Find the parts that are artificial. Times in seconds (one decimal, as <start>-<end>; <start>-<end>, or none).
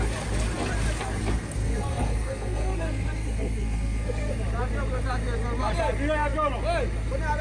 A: 1.2-4.3